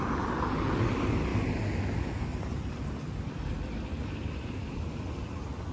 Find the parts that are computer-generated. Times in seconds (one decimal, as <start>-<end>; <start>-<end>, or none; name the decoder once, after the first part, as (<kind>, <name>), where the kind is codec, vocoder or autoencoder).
none